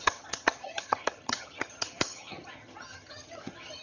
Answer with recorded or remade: remade